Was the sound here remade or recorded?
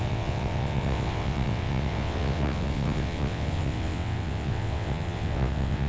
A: remade